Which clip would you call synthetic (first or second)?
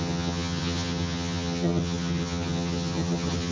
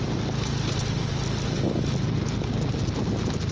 first